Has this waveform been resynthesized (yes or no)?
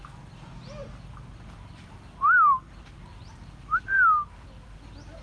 no